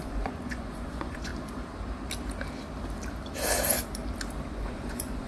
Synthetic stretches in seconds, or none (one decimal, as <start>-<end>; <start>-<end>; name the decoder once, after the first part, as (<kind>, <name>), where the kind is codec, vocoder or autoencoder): 0.0-1.3 (vocoder, Vocos); 4.5-5.3